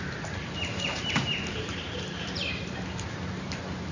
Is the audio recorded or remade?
remade